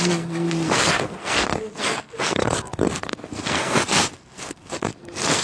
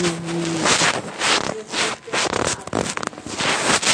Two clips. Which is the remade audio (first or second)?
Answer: first